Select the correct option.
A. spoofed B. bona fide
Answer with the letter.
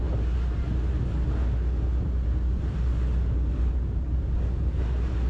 B